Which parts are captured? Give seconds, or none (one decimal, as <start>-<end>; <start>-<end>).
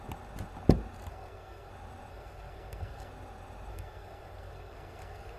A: 0.0-1.1; 1.7-2.1; 3.1-3.7